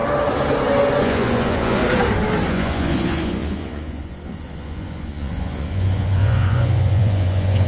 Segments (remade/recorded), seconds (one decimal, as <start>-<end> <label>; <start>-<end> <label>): 0.0-1.0 recorded; 1.0-1.8 remade; 1.8-2.5 recorded; 2.5-7.7 remade